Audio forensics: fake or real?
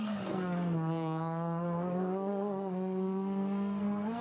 fake